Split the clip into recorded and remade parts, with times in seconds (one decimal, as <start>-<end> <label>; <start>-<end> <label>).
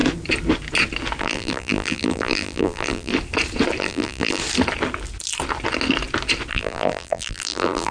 0.0-1.2 recorded; 1.2-3.1 remade; 3.1-3.8 recorded; 3.8-4.4 remade; 4.4-6.5 recorded; 6.5-7.9 remade